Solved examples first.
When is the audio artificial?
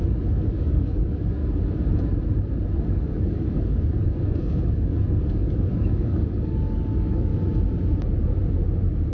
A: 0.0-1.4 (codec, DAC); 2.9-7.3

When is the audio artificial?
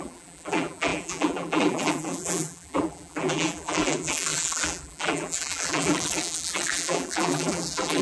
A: 0.0-8.0 (vocoder, BigVGAN v2)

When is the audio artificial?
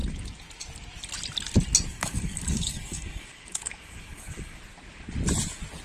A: 1.9-4.6 (codec, DAC)